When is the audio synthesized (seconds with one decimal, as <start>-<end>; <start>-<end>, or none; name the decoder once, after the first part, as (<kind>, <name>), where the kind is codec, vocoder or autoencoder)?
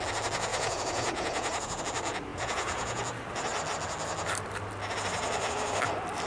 0.5-1.8 (vocoder, Vocos); 2.3-3.0